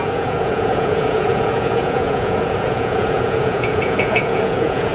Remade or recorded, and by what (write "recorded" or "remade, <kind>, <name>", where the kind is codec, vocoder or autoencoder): remade, vocoder, Vocos